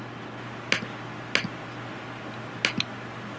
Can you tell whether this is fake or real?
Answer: real